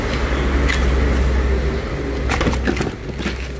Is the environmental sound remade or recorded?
recorded